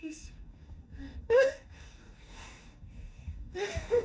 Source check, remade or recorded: remade